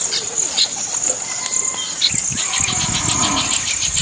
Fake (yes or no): no